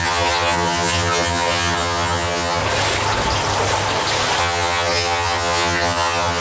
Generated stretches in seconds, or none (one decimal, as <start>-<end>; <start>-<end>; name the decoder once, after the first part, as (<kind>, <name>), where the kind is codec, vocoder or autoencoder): 0.0-2.6 (vocoder, HiFi-GAN); 4.4-6.4